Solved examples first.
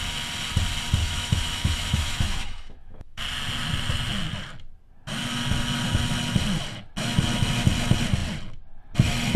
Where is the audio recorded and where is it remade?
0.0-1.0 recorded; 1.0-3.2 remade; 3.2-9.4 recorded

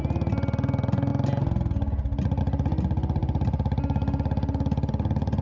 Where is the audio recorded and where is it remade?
0.0-5.4 recorded